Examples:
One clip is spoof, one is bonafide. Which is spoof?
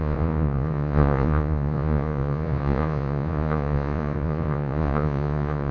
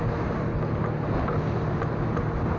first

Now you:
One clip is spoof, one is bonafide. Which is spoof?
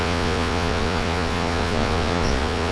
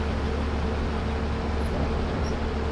first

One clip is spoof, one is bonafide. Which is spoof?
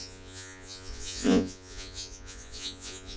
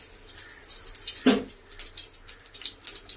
first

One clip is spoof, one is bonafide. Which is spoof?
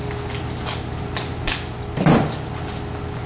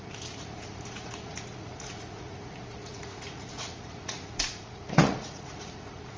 second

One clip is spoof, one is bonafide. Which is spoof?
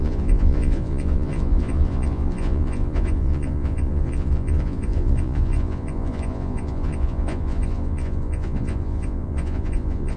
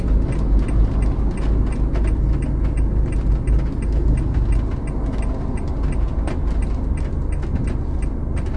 first